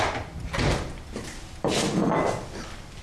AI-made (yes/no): no